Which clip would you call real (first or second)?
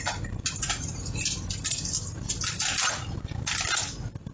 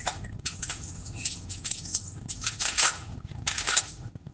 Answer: first